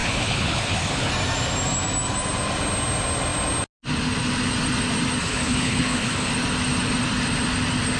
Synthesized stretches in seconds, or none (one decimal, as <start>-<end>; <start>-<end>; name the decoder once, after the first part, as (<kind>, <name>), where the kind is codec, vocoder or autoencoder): 0.0-1.1 (codec, HILCodec); 5.2-6.3

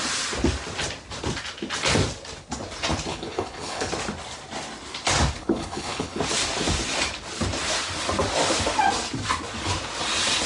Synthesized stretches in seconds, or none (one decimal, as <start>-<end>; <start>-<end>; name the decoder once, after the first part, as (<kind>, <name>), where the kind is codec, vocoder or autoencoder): 3.1-3.9 (codec, HILCodec); 5.4-6.2

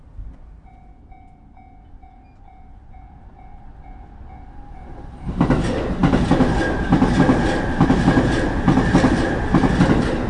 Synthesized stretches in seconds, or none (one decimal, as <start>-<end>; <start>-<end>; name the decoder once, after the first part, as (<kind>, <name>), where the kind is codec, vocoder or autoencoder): none

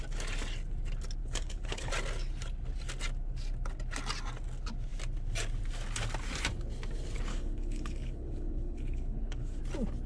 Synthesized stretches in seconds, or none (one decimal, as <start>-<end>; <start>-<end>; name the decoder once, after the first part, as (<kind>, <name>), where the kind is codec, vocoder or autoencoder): 1.2-1.9 (codec, HILCodec); 7.3-9.6

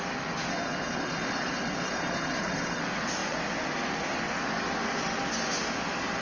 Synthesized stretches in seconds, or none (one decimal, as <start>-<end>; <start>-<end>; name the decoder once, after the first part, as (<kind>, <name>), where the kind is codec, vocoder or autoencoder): 0.5-2.8 (codec, HILCodec)

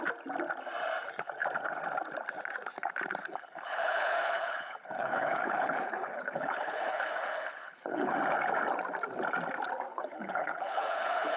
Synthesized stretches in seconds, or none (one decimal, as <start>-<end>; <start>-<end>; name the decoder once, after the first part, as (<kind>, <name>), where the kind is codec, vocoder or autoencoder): 3.2-8.2 (codec, HILCodec); 9.9-11.4

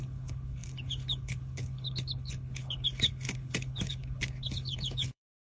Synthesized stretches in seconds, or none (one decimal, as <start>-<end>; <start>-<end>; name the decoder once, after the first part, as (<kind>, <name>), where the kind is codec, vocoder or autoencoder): 0.0-5.5 (codec, HILCodec)

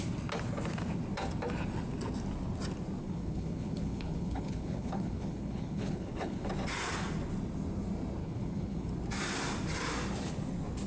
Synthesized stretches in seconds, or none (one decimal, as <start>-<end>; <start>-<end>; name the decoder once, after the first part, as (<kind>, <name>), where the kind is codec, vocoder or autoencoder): 3.0-6.5 (codec, HILCodec); 8.2-8.9